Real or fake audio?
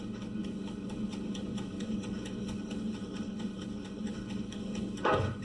fake